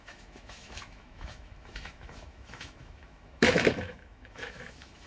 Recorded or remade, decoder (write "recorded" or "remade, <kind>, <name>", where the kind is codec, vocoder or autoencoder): remade, autoencoder, DAC-VAE